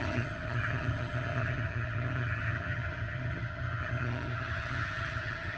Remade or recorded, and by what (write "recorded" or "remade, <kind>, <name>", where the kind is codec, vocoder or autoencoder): remade, vocoder, HiFi-GAN